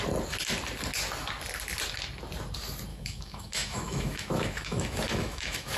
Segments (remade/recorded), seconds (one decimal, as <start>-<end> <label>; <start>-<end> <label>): 0.0-2.9 recorded; 2.9-5.8 remade